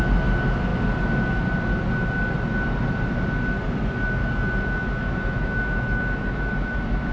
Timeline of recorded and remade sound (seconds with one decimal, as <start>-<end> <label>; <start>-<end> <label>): 0.0-4.2 recorded; 4.2-7.1 remade